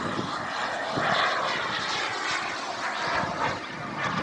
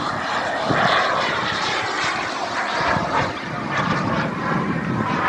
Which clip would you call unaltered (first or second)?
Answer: first